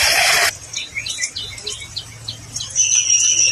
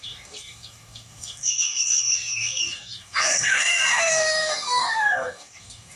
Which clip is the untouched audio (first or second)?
first